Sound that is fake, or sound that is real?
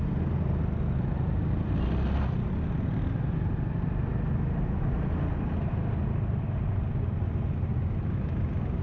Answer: real